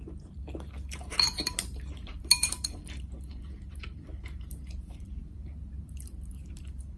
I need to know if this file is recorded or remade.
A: remade